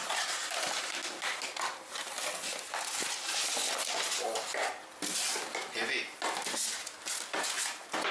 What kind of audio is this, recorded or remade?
recorded